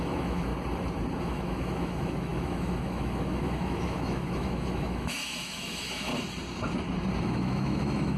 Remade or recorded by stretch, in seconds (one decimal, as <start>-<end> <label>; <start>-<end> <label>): 0.0-0.5 remade; 0.5-1.2 recorded; 1.2-6.1 remade; 6.1-7.2 recorded; 7.2-8.2 remade

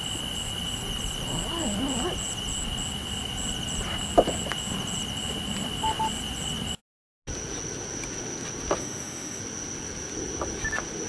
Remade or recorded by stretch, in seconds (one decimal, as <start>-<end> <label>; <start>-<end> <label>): 0.0-8.8 recorded; 8.8-9.4 remade; 9.4-11.1 recorded

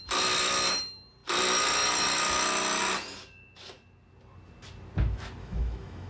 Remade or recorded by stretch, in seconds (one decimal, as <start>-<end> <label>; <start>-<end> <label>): 0.0-5.4 recorded; 5.4-6.1 remade

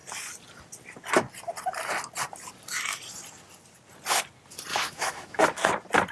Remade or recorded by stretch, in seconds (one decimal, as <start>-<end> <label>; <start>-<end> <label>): 0.0-4.7 recorded; 4.7-5.4 remade; 5.4-6.1 recorded

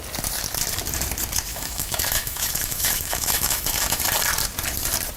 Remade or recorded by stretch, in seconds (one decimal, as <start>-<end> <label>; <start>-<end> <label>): 0.0-1.5 recorded; 1.5-4.0 remade; 4.0-5.2 recorded